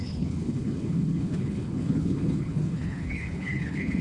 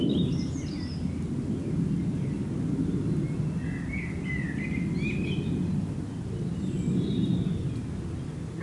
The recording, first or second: second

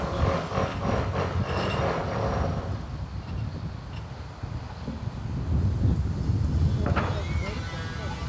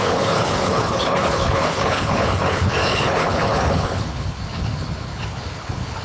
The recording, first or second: first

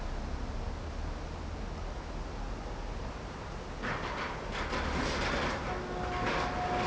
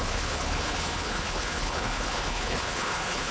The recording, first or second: first